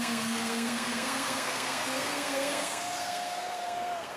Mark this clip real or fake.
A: fake